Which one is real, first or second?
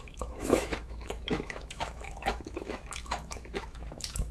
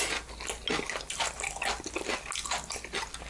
second